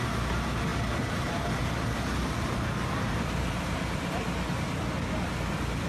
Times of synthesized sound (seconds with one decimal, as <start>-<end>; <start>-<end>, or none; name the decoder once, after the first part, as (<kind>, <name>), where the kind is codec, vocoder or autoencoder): 0.7-4.2 (vocoder, BigVGAN v2)